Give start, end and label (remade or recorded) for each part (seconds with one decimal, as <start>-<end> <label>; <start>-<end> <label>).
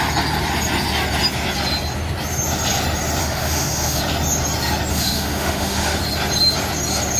0.0-3.2 recorded; 3.2-4.0 remade; 4.0-4.9 recorded; 4.9-6.0 remade; 6.0-7.2 recorded